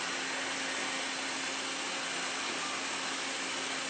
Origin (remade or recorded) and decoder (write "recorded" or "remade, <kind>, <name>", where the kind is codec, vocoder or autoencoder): recorded